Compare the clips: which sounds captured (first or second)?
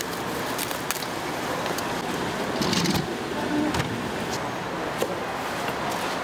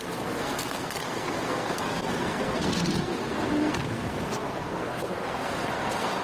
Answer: first